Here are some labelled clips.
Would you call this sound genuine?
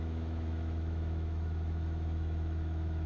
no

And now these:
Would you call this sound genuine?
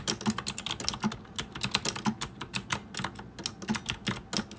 yes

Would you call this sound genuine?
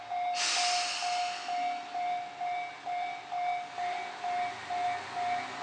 yes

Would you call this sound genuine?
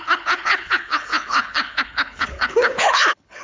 no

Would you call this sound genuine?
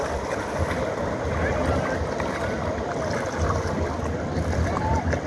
yes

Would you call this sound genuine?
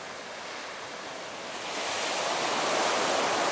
yes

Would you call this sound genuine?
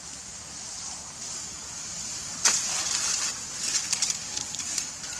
no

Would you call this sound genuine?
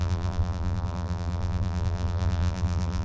no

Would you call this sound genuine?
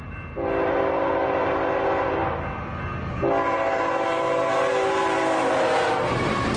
yes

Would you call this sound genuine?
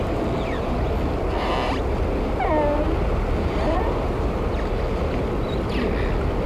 yes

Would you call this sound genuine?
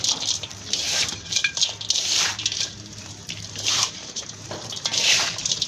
no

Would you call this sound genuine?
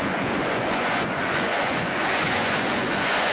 no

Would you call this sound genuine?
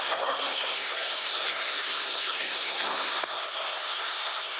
no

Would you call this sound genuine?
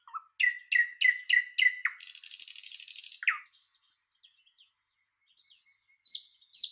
yes